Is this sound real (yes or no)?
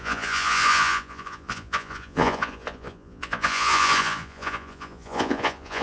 no